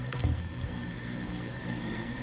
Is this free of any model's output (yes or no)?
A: no